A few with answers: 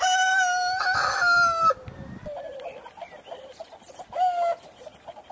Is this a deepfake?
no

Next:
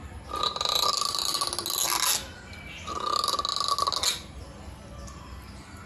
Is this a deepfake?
no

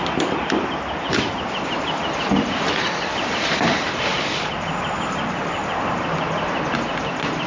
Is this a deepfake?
yes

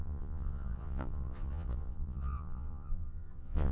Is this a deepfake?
yes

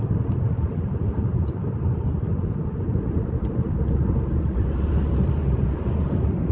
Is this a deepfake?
no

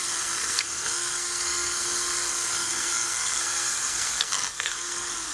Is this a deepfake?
yes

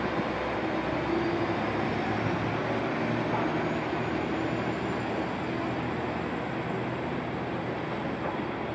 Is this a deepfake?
no